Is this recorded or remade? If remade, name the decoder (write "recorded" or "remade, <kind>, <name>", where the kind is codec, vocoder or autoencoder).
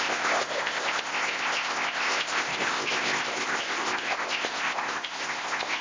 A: remade, codec, ZipCodec